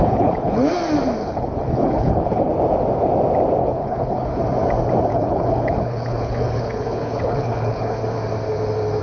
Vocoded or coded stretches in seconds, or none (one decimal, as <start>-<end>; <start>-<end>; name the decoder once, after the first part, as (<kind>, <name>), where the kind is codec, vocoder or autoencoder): 0.0-0.7 (codec, HILCodec); 1.2-2.5; 3.6-4.4; 5.1-8.0